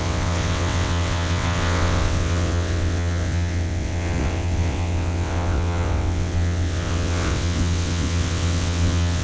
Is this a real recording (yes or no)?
no